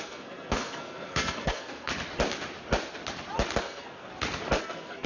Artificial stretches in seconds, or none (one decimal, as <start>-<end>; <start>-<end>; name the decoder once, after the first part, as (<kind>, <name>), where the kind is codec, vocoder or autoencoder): 0.0-1.9 (codec, SNAC); 3.6-4.1; 4.6-5.1